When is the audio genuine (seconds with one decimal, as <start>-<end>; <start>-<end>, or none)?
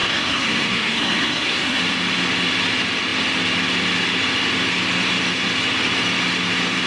1.8-6.9